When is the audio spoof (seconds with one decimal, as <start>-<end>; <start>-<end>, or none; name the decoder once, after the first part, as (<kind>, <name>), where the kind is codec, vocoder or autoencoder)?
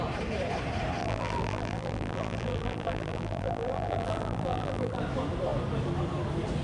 1.0-5.0 (vocoder, BigVGAN v2)